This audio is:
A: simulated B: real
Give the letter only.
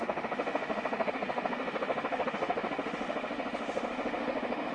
A